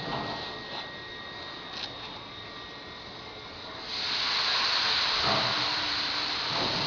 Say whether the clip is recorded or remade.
recorded